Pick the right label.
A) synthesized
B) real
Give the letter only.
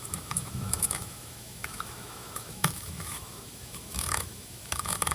A